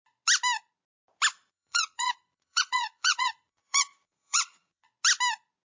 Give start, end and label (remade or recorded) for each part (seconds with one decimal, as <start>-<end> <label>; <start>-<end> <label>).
0.0-1.4 recorded; 1.4-4.9 remade; 4.9-5.8 recorded